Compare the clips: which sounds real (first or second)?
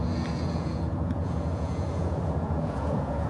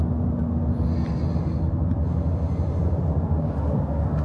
second